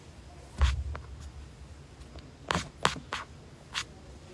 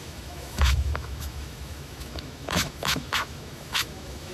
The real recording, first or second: first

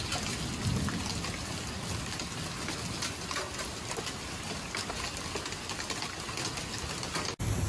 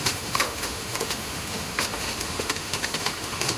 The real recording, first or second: first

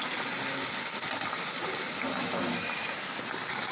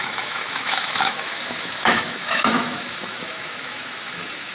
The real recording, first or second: first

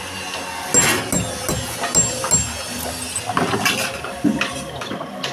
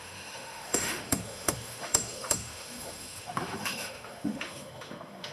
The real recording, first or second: first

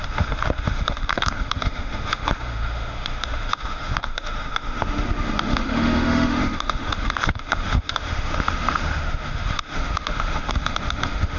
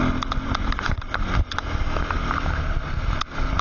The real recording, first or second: second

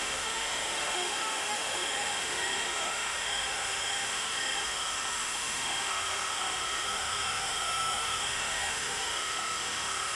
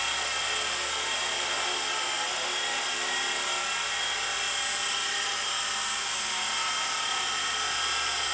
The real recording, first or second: second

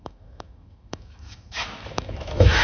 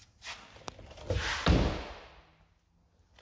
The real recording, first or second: second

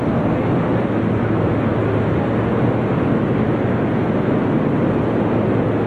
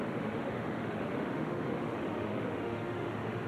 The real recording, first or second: first